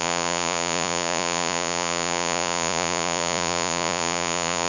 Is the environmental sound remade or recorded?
remade